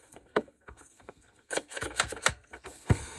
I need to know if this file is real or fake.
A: fake